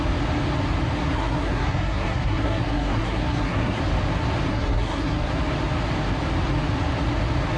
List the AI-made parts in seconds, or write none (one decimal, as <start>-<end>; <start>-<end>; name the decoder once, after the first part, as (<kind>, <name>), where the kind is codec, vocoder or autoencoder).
1.0-3.8 (codec, SNAC); 4.5-5.3